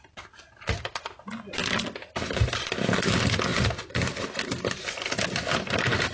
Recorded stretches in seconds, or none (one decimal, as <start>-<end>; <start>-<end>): 0.0-6.1